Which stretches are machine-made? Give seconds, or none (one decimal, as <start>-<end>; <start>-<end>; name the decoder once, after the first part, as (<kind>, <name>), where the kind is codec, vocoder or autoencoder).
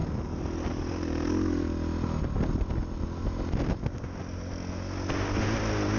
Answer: none